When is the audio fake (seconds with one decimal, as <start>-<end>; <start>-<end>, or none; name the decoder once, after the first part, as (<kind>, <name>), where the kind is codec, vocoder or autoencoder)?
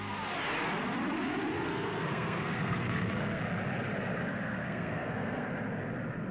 1.7-3.4 (codec, SNAC); 4.2-5.5